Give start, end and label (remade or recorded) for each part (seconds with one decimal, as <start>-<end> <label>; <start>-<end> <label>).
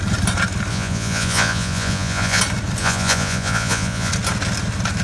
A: 0.0-0.7 recorded; 0.7-2.4 remade; 2.4-2.8 recorded; 2.8-4.1 remade; 4.1-5.0 recorded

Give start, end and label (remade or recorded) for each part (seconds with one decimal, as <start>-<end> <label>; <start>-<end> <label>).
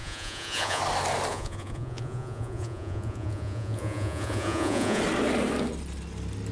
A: 0.0-0.8 remade; 0.8-1.3 recorded; 1.3-5.0 remade; 5.0-6.5 recorded